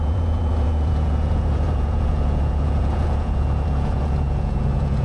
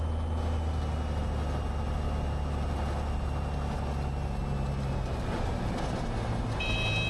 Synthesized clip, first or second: first